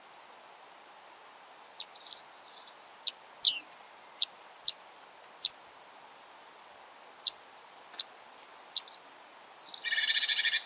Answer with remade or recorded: recorded